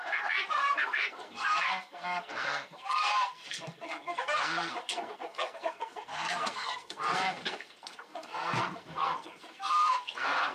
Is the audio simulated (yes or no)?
yes